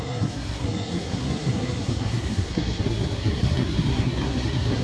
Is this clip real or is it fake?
fake